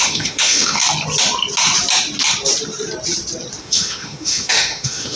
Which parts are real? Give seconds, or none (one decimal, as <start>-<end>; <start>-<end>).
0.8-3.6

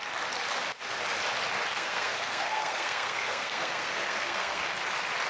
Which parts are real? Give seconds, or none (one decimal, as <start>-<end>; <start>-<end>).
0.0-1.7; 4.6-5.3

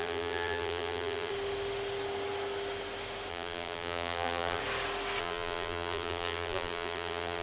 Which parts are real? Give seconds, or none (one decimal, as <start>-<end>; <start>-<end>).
1.3-3.3; 4.6-5.2

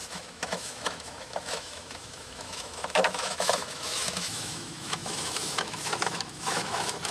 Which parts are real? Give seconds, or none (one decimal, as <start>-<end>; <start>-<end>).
none

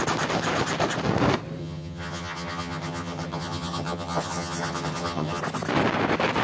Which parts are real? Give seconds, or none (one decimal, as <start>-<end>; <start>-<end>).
0.0-1.6; 5.4-6.4

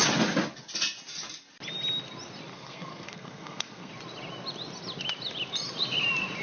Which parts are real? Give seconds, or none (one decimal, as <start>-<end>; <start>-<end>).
0.0-2.5; 3.9-6.4

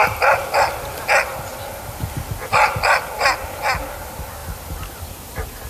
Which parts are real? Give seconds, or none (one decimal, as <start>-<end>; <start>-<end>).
0.0-5.7

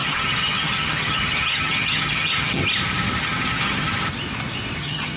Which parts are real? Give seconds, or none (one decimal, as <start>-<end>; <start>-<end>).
2.6-3.2; 3.9-4.8